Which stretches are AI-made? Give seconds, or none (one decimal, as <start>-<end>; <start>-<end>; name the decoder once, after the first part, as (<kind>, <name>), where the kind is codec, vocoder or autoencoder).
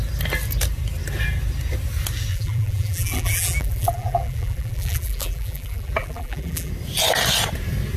2.3-6.7 (vocoder, BigVGAN v2)